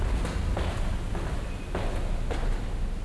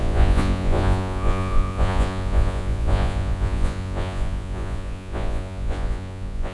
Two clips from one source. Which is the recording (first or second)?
first